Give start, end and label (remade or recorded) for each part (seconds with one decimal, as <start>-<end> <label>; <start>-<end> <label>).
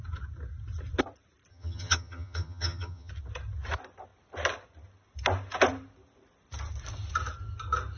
0.0-1.5 recorded; 1.5-3.1 remade; 3.1-8.0 recorded